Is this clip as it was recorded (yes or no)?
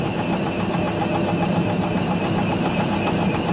yes